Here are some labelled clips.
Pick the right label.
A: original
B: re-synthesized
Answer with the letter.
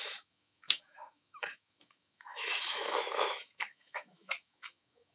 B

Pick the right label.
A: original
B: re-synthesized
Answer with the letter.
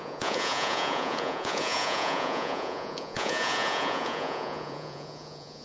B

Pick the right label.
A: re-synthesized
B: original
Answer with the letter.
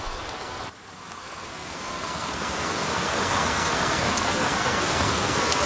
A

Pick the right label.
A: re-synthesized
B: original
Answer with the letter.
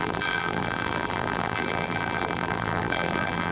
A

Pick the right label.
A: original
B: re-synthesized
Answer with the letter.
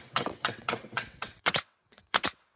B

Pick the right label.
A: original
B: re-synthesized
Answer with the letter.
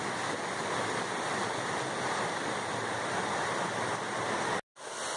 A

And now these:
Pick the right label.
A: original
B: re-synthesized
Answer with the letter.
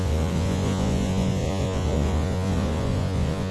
B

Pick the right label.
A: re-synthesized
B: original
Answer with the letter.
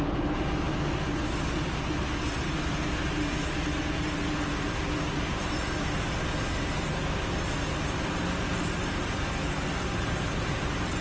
B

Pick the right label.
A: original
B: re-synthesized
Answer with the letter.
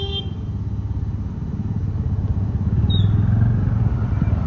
A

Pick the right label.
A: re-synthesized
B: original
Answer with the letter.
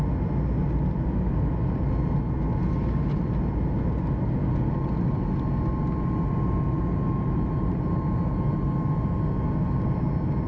B